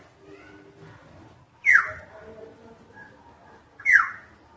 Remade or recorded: recorded